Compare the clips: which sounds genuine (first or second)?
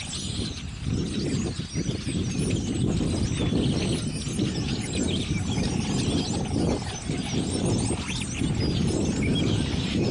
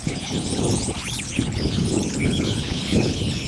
first